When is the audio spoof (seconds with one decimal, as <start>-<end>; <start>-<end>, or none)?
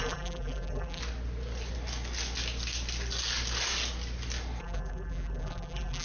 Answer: 0.0-1.0; 4.6-6.0